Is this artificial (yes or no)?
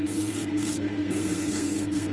yes